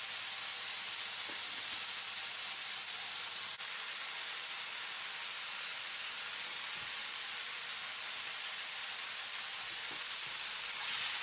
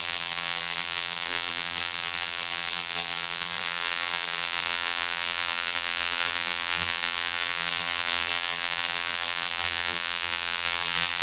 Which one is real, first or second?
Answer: first